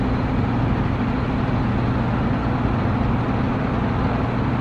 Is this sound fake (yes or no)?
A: no